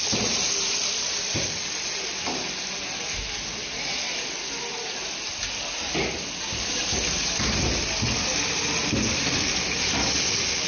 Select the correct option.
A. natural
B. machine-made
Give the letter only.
A